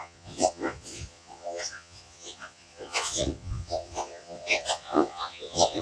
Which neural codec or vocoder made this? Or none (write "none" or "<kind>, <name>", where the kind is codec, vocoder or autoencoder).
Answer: vocoder, Vocos